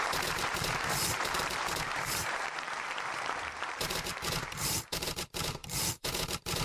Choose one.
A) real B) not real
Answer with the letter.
B